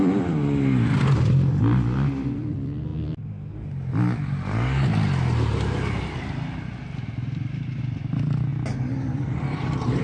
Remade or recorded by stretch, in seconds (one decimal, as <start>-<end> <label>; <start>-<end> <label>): 0.0-2.9 remade; 2.9-7.3 recorded; 7.3-8.5 remade; 8.5-10.0 recorded